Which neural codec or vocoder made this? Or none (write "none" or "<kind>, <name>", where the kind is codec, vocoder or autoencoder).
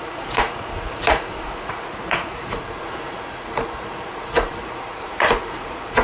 vocoder, Vocos